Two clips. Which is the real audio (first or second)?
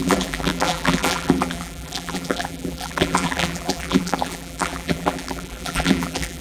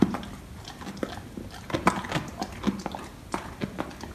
second